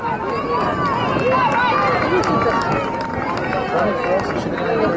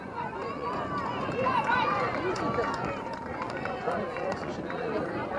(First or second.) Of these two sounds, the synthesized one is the second